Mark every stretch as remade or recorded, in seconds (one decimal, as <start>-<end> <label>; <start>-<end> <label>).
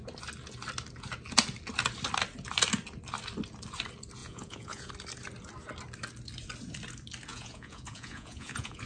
0.0-4.2 recorded; 4.2-4.9 remade; 4.9-7.3 recorded; 7.3-8.9 remade